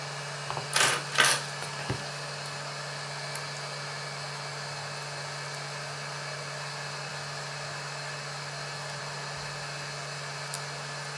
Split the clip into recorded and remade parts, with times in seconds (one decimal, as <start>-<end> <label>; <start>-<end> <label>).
0.0-11.2 recorded